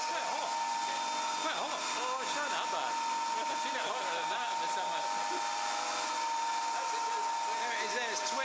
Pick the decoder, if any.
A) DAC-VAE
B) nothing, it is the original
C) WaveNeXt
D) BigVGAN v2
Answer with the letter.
B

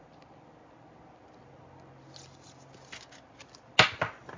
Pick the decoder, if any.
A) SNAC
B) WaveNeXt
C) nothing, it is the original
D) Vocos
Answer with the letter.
C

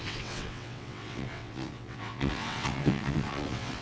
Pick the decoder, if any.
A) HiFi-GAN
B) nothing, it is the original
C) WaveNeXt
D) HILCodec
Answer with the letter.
C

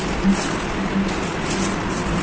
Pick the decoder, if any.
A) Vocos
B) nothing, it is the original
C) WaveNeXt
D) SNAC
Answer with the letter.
B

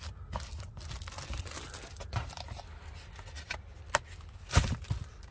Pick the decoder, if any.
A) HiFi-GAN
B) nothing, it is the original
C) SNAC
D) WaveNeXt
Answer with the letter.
B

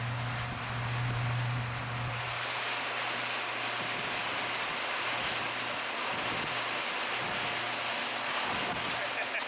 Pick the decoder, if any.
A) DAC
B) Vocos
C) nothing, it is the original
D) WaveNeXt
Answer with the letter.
C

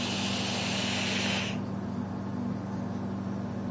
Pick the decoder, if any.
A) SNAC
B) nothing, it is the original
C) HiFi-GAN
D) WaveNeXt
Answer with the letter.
B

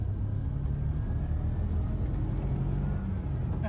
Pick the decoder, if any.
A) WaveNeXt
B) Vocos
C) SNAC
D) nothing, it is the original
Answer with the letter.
D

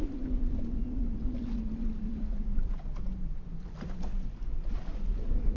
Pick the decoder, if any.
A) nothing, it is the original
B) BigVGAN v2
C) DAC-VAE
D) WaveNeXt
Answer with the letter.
A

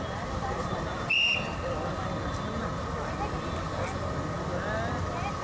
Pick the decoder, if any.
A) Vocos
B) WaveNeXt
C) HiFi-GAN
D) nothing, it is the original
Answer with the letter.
D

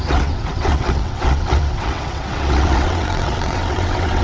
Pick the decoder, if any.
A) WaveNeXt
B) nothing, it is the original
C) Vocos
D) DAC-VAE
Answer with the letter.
A